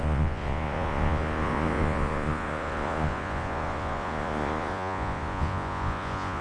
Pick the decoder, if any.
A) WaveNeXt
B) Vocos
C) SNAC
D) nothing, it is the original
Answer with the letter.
B